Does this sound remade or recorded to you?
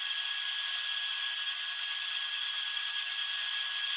recorded